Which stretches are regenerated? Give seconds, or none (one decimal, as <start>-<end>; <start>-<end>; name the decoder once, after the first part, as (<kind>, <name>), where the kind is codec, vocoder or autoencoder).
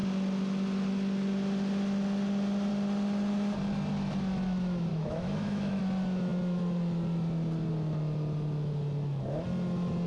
4.9-5.8 (autoencoder, DAC-VAE)